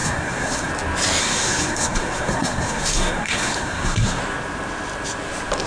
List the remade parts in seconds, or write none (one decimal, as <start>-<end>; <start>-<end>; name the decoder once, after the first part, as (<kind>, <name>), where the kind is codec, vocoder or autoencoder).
0.0-0.7 (codec, SNAC); 1.2-4.2